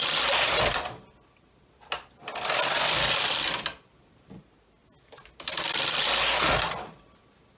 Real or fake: real